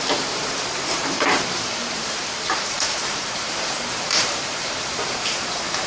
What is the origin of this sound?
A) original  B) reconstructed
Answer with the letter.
B